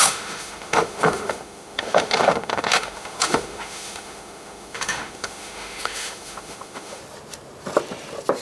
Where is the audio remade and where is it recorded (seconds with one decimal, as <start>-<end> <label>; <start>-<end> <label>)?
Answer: 0.0-7.0 remade; 7.0-8.4 recorded

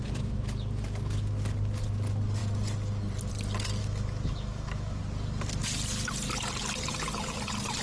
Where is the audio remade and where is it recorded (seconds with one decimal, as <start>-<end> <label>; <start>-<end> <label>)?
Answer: 0.0-3.8 recorded; 3.8-5.0 remade; 5.0-7.8 recorded

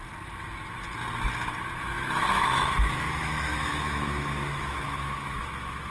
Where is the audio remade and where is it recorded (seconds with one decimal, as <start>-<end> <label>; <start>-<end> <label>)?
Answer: 0.0-1.8 recorded; 1.8-5.9 remade

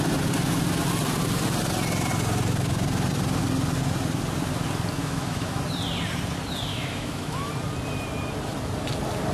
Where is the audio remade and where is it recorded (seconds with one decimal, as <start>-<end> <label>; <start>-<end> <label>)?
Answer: 0.0-5.0 recorded; 5.0-5.6 remade; 5.6-6.7 recorded; 6.7-7.5 remade; 7.5-9.3 recorded

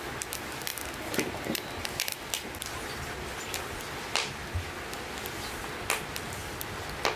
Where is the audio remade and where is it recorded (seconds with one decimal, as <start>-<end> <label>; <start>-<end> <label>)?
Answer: 0.0-7.2 recorded

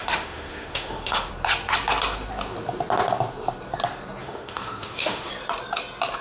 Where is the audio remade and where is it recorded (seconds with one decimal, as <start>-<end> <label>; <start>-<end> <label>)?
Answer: 0.0-1.3 remade; 1.3-4.2 recorded; 4.2-5.3 remade; 5.3-6.2 recorded